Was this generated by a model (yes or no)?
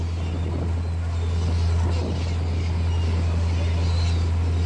no